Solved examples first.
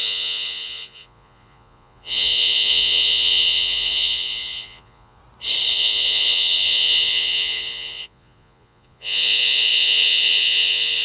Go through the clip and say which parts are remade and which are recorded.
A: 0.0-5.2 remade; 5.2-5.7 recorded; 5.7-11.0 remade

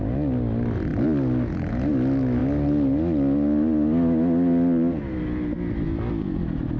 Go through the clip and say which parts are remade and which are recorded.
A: 0.0-6.8 recorded

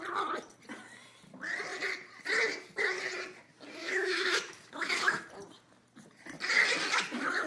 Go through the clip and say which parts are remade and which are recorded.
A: 0.0-3.8 recorded; 3.8-5.3 remade; 5.3-7.5 recorded

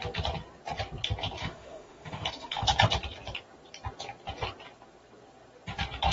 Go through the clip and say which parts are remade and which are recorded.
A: 0.0-1.4 recorded; 1.4-2.7 remade; 2.7-6.1 recorded